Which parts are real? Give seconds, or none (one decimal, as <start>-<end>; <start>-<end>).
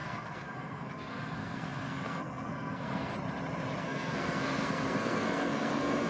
3.1-3.8